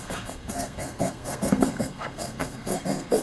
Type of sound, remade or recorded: remade